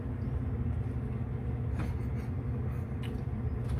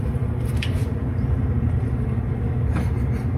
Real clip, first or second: first